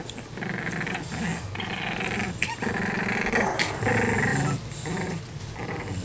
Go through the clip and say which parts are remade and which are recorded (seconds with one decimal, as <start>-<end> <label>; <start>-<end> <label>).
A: 0.0-6.0 recorded